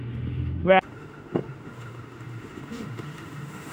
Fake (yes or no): yes